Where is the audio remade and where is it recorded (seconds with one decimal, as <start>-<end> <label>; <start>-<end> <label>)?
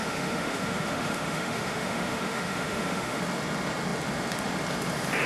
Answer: 0.0-3.2 remade; 3.2-5.3 recorded